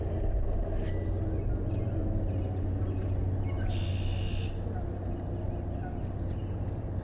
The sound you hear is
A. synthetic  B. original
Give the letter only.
B